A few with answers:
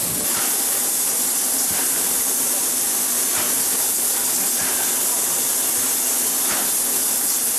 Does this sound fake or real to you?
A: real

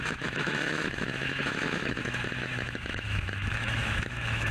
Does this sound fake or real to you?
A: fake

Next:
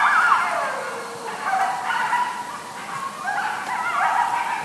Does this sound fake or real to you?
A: real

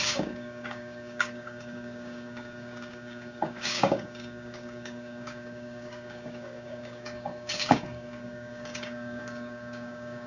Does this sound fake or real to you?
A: fake